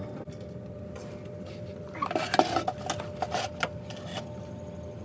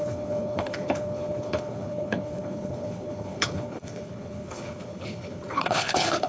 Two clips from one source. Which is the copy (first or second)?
second